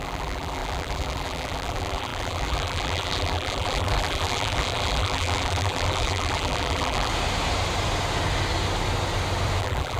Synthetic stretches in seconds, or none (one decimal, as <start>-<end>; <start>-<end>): 0.0-7.1; 9.6-10.0